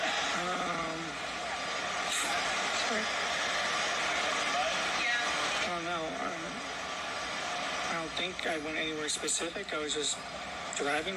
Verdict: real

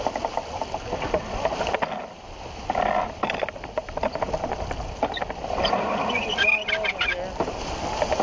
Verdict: real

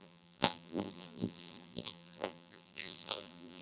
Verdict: fake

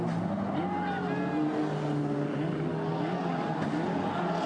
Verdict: real